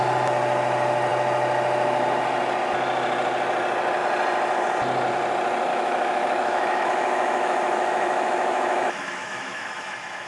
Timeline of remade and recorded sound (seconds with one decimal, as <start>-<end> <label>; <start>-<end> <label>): 0.0-5.7 recorded; 5.7-10.3 remade